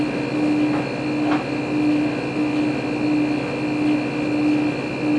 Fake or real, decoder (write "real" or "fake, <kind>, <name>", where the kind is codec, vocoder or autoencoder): real